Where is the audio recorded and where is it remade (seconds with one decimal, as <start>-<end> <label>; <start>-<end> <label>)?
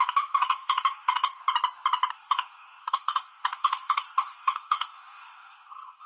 0.0-1.4 remade; 1.4-2.1 recorded; 2.1-6.1 remade